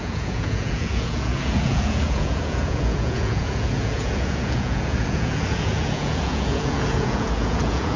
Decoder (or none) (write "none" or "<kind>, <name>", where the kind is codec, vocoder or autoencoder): vocoder, Vocos